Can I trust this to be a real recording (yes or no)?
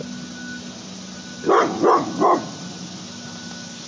yes